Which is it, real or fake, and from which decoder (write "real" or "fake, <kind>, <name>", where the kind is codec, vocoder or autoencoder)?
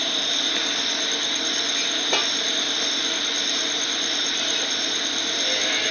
real